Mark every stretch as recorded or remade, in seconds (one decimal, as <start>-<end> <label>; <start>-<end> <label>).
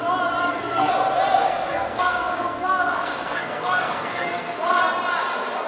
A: 0.0-0.4 recorded; 0.4-0.9 remade; 0.9-1.4 recorded; 1.4-4.8 remade; 4.8-5.7 recorded